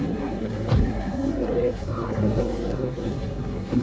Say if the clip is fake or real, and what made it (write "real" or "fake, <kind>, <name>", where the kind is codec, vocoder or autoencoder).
fake, codec, SNAC